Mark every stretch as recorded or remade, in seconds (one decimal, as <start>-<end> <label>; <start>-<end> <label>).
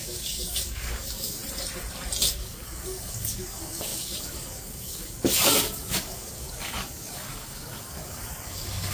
0.0-1.4 remade; 1.4-2.3 recorded; 2.3-8.9 remade